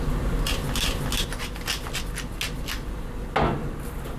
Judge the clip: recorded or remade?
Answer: recorded